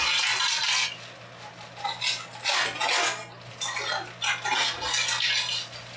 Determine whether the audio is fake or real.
real